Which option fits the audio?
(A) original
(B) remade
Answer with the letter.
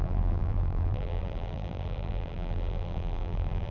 B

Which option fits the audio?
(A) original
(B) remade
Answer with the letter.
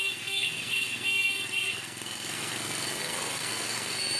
B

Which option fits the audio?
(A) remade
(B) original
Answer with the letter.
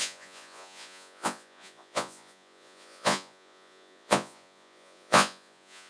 A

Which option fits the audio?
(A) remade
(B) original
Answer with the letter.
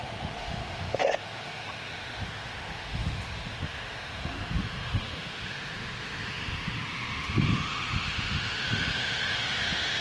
A